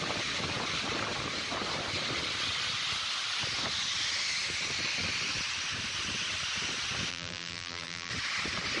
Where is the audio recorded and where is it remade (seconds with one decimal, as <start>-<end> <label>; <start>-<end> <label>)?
0.0-7.1 recorded; 7.1-8.1 remade; 8.1-8.8 recorded